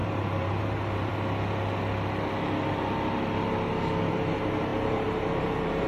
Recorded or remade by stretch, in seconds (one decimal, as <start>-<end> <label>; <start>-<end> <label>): 0.0-1.1 remade; 1.1-4.1 recorded; 4.1-5.9 remade